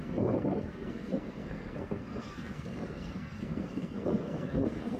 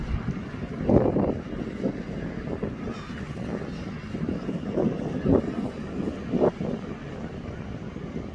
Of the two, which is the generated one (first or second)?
first